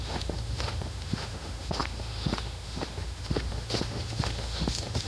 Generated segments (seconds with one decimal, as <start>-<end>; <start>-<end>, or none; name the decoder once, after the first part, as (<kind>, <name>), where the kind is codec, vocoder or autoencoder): 0.0-5.1 (autoencoder, DAC-VAE)